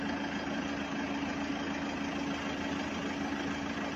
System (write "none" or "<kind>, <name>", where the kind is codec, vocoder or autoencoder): none